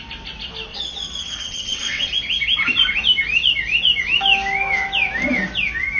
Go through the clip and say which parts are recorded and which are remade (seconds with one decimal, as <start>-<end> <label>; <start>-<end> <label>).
0.0-0.7 recorded; 0.7-2.1 remade; 2.1-6.0 recorded